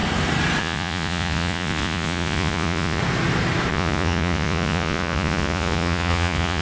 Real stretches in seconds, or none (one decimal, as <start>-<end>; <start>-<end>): 0.0-0.6; 3.0-3.7